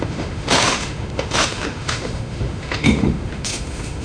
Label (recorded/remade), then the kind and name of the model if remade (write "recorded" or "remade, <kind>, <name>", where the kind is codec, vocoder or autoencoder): remade, autoencoder, DAC-VAE